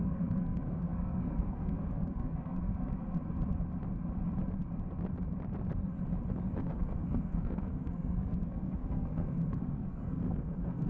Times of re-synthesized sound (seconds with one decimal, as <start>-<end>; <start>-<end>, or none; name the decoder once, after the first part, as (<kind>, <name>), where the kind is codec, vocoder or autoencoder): 0.0-2.7 (codec, SNAC); 6.6-10.9